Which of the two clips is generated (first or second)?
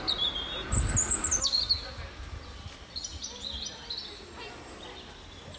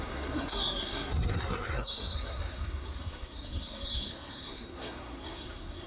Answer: second